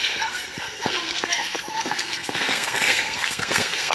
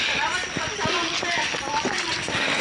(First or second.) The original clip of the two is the second